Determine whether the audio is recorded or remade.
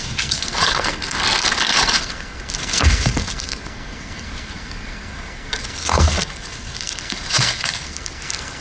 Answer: remade